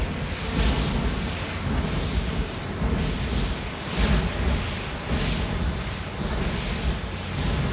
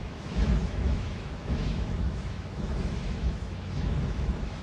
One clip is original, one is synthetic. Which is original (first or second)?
first